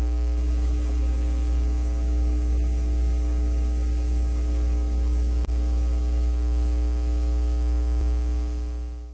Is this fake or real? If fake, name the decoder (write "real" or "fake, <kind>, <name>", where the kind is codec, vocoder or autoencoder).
fake, codec, DAC